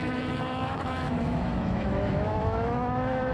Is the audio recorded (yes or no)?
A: no